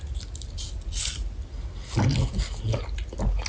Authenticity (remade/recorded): recorded